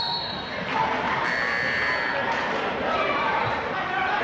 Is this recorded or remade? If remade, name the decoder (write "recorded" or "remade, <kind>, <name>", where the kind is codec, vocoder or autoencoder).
recorded